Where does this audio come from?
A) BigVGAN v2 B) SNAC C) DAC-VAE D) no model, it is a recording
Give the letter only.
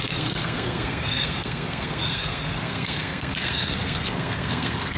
B